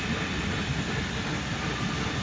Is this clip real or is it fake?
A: real